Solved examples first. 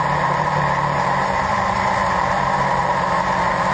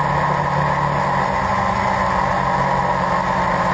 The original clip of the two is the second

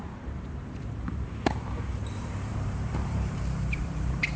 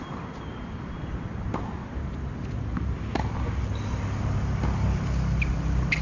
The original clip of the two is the second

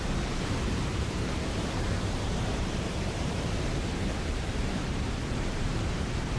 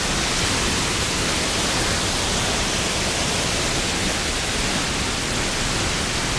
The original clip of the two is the second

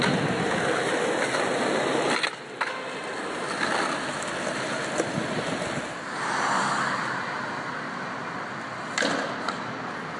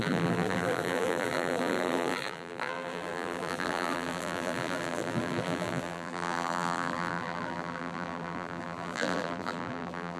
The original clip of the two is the first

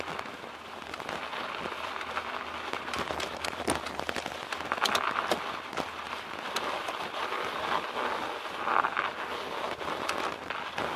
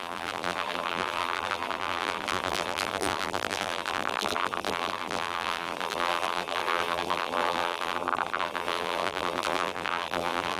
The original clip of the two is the first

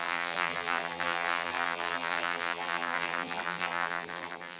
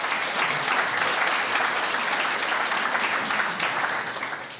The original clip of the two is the second